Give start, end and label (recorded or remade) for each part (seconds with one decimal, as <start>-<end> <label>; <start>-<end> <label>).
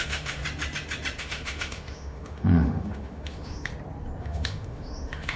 0.0-0.4 remade; 0.4-1.2 recorded; 1.2-3.7 remade; 3.7-4.2 recorded; 4.2-5.4 remade